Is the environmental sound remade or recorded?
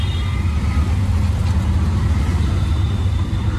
recorded